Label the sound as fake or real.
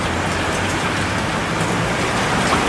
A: real